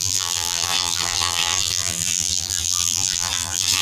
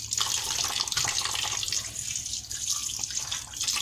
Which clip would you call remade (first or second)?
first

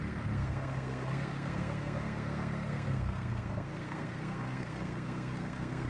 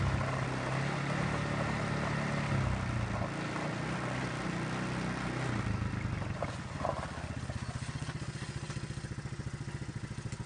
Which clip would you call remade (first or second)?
first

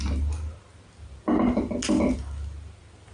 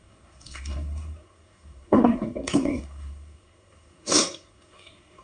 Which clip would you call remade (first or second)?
second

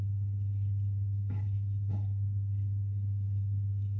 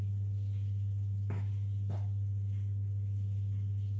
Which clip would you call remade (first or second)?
first